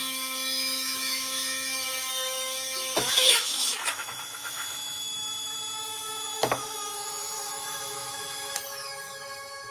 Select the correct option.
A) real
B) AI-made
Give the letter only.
B